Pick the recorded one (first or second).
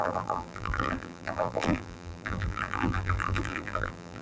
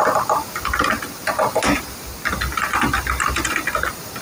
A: second